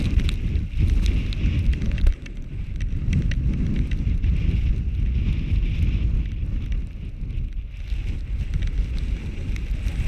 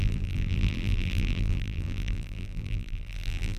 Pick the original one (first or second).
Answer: first